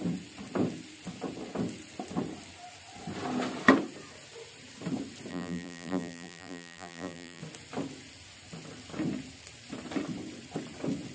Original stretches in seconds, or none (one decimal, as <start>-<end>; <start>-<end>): 0.0-5.3; 7.4-11.1